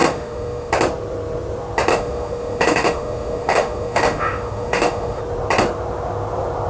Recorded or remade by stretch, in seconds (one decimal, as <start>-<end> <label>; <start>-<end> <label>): 0.0-0.7 remade; 0.7-1.9 recorded; 1.9-5.2 remade; 5.2-6.7 recorded